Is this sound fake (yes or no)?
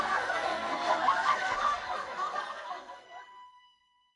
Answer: yes